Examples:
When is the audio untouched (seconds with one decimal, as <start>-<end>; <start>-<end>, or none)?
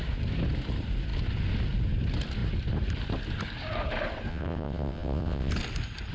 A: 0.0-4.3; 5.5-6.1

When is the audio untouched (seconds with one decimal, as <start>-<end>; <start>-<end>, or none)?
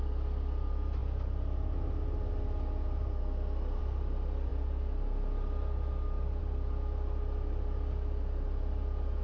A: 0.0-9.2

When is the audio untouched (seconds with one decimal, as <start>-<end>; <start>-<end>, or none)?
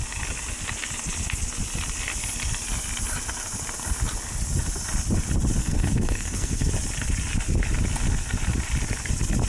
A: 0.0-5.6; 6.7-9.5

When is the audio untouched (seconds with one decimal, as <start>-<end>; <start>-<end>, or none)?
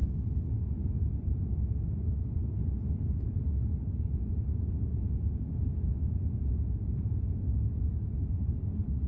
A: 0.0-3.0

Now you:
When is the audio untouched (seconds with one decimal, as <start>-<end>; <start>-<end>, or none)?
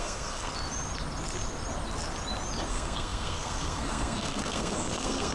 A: 0.5-2.7